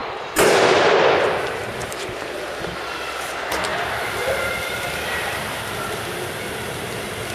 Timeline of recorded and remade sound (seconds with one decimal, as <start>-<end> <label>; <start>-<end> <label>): 0.0-3.2 remade; 3.2-3.7 recorded; 3.7-7.3 remade